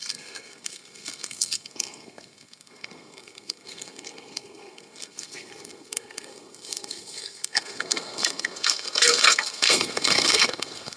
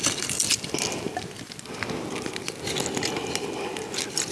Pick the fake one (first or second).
first